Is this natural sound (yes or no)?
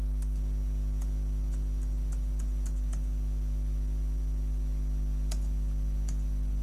yes